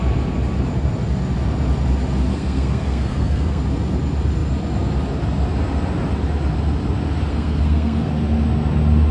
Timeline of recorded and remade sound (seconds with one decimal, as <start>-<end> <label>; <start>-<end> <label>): 0.0-2.3 recorded; 2.3-3.6 remade; 3.6-7.3 recorded; 7.3-8.1 remade; 8.1-9.1 recorded